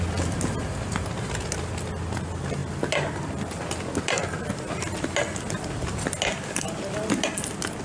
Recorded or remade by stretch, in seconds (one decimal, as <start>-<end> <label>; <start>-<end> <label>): 0.0-7.8 recorded